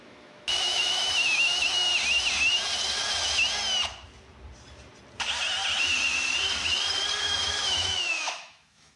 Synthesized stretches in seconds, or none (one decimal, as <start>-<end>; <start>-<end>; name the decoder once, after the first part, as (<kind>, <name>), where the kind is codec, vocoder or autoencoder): 0.0-1.9 (autoencoder, DAC-VAE); 7.2-9.0